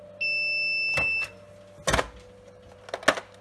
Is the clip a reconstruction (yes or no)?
no